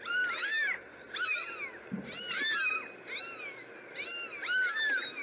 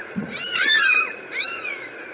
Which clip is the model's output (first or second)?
second